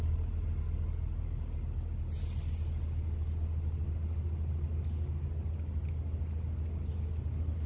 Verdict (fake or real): real